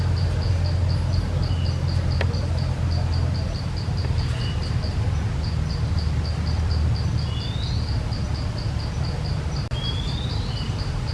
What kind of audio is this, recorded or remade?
recorded